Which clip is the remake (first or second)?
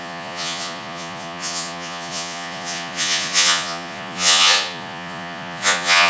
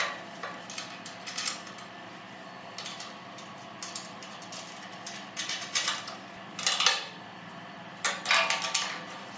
first